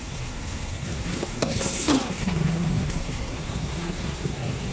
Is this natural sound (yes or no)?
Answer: no